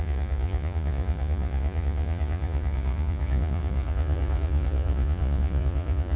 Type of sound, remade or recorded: remade